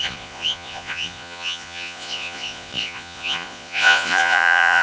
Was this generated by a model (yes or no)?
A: yes